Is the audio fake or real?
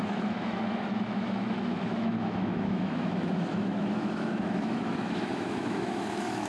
fake